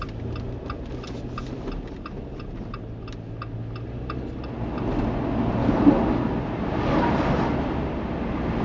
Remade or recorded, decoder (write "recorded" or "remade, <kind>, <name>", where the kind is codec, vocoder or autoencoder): recorded